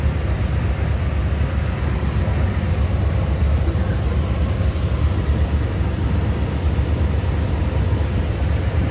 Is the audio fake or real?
real